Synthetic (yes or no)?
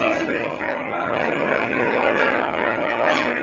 yes